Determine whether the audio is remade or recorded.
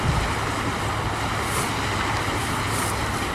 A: recorded